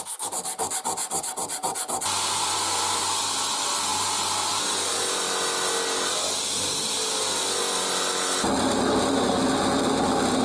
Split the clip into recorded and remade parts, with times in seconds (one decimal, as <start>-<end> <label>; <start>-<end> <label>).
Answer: 0.0-10.4 recorded